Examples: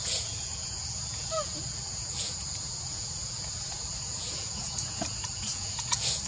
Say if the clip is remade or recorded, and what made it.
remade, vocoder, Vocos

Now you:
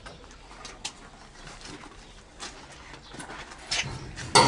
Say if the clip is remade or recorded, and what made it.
recorded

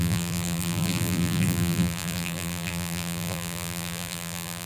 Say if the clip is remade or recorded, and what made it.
remade, vocoder, BigVGAN v2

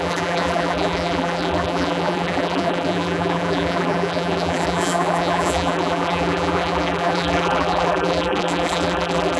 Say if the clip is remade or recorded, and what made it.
remade, vocoder, BigVGAN v2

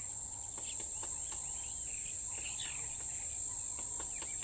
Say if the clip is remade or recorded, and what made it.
recorded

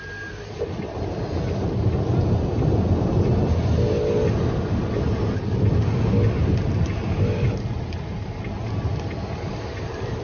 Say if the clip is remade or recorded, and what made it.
recorded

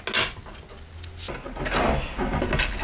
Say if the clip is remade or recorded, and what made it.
recorded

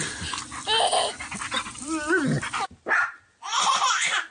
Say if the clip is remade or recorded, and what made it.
recorded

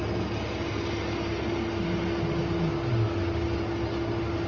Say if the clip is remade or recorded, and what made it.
recorded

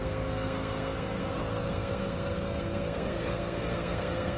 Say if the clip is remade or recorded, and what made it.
remade, codec, SNAC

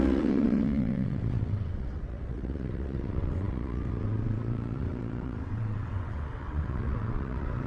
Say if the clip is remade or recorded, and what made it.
remade, vocoder, WaveNeXt